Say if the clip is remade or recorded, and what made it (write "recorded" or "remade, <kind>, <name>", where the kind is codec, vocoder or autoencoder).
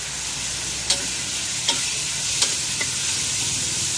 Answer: recorded